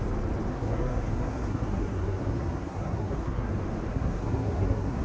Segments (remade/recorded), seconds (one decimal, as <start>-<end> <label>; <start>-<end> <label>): 0.0-0.5 recorded; 0.5-3.5 remade; 3.5-3.9 recorded; 3.9-5.0 remade